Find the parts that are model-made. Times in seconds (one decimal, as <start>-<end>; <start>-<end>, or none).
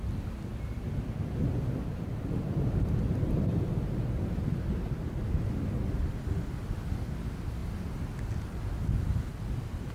none